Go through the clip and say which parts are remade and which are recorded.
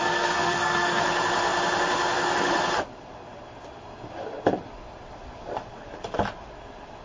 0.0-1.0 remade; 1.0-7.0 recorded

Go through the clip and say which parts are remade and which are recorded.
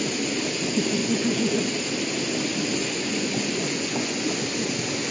0.0-1.0 recorded; 1.0-1.7 remade; 1.7-2.8 recorded; 2.8-4.5 remade; 4.5-5.1 recorded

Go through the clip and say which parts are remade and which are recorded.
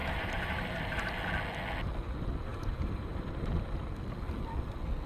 0.0-1.1 remade; 1.1-2.5 recorded; 2.5-3.4 remade; 3.4-5.1 recorded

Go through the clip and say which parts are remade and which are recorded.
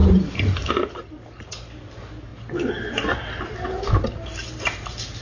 0.0-0.7 remade; 0.7-5.2 recorded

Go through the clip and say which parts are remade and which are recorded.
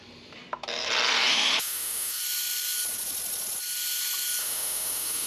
0.0-1.3 recorded; 1.3-2.2 remade; 2.2-4.4 recorded; 4.4-5.3 remade